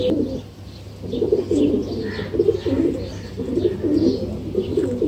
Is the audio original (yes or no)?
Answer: yes